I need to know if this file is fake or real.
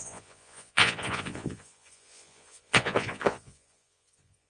fake